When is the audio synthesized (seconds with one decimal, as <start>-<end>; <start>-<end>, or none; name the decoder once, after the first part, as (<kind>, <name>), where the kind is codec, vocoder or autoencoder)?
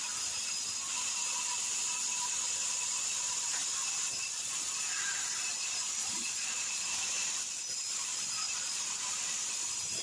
6.0-7.0 (vocoder, Vocos); 8.4-8.9